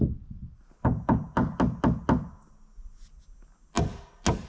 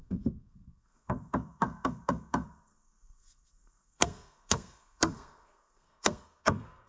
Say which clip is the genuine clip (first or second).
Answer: first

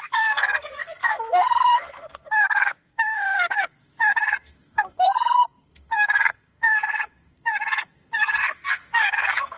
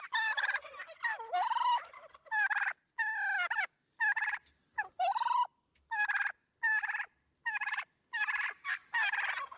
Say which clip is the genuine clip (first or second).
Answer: second